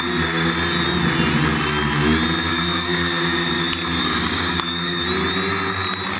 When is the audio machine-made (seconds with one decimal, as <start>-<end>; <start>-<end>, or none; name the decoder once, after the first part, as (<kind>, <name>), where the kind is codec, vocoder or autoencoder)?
2.5-3.5 (codec, DAC); 4.0-5.0